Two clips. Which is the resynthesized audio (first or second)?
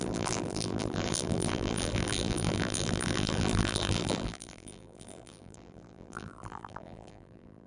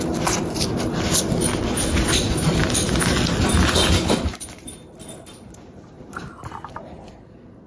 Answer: first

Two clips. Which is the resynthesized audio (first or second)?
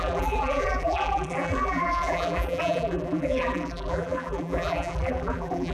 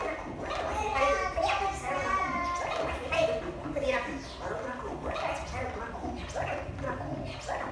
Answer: first